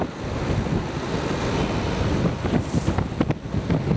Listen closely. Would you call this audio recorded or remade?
recorded